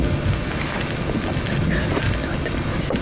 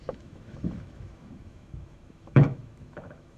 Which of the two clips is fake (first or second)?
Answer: second